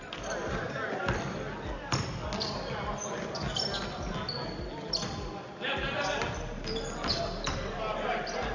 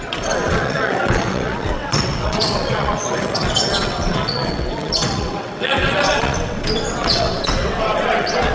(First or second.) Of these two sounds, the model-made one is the second